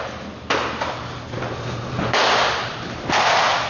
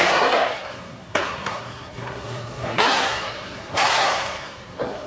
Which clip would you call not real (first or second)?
second